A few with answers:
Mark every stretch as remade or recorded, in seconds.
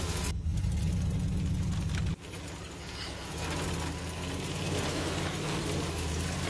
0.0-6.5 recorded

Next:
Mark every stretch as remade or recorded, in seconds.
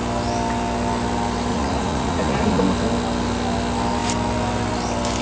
0.0-1.5 recorded; 1.5-2.6 remade; 2.6-5.2 recorded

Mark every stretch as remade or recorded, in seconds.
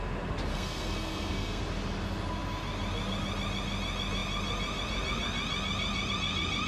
0.0-0.5 recorded; 0.5-1.6 remade; 1.6-6.7 recorded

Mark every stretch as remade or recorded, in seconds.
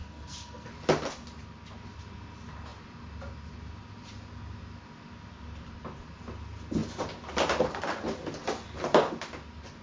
0.0-0.7 remade; 0.7-9.8 recorded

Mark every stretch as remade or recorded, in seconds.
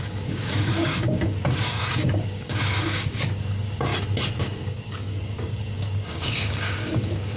0.0-3.9 remade; 3.9-4.4 recorded; 4.4-7.4 remade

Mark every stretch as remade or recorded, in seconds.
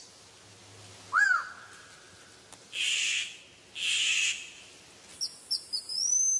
0.0-6.4 recorded